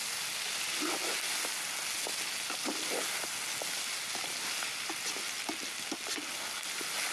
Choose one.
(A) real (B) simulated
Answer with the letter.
A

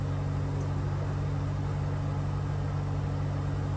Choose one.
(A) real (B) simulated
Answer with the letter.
A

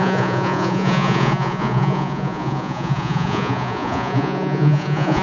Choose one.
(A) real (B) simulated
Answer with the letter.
B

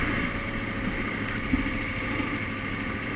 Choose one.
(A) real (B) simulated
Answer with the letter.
A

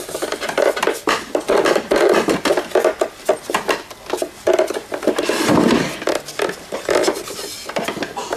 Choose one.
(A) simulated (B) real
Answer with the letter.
B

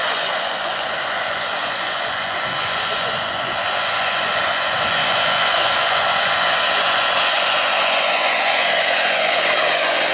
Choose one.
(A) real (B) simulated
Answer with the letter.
B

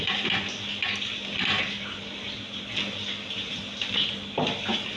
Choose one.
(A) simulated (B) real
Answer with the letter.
B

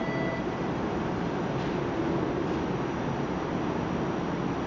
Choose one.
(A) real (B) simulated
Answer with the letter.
A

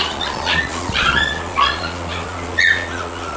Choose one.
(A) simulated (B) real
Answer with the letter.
A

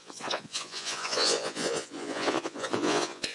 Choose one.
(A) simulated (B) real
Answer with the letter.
A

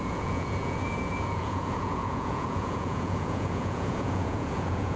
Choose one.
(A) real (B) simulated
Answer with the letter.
B